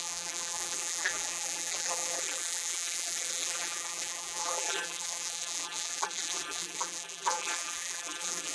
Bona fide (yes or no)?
no